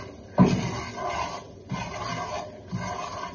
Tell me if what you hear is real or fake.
real